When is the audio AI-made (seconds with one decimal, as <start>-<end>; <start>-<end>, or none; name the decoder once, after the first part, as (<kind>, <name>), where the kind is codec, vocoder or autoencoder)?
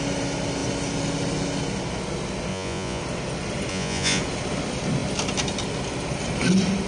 2.5-3.0 (vocoder, Vocos); 3.7-4.2